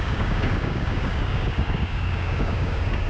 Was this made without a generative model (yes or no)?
no